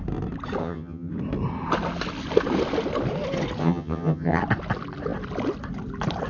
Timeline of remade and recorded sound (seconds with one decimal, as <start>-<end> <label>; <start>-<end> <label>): 0.0-0.6 recorded; 0.6-1.1 remade; 1.1-3.6 recorded; 3.6-4.4 remade; 4.4-6.3 recorded